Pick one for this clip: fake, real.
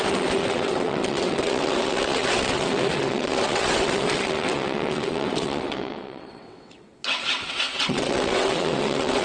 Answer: fake